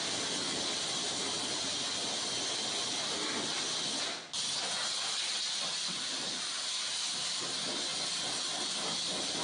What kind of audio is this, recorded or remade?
recorded